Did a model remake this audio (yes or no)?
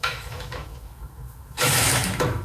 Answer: yes